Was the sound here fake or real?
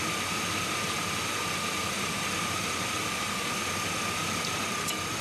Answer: real